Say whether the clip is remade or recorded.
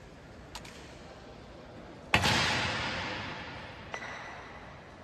recorded